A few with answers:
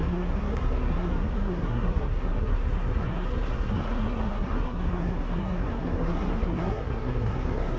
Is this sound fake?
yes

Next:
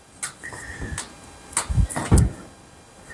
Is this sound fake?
no